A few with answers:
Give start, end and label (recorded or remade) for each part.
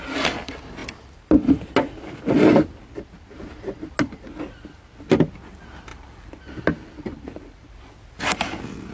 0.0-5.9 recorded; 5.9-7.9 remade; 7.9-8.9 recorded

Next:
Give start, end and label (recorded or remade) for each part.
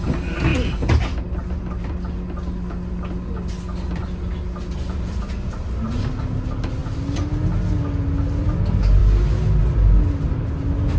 0.0-11.0 recorded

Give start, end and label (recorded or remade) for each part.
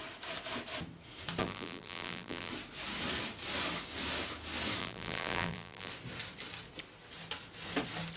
0.0-1.4 recorded; 1.4-2.5 remade; 2.5-4.8 recorded; 4.8-5.9 remade; 5.9-8.2 recorded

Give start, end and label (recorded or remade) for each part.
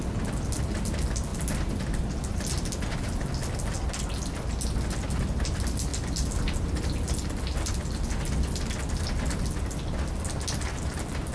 0.0-11.3 recorded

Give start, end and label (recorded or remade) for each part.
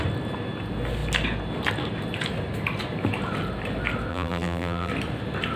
0.0-4.1 recorded; 4.1-4.9 remade; 4.9-5.6 recorded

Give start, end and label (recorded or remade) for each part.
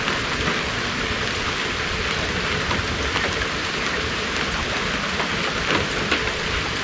0.0-3.6 recorded; 3.6-4.9 remade; 4.9-6.8 recorded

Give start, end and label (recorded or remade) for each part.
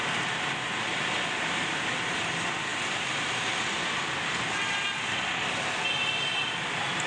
0.0-2.7 recorded; 2.7-3.8 remade; 3.8-7.1 recorded